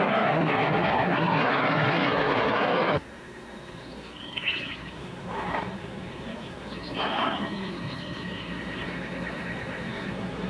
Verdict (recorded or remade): remade